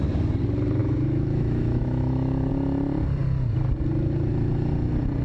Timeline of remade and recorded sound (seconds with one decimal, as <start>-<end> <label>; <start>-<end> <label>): 0.0-0.8 recorded; 0.8-2.5 remade; 2.5-5.2 recorded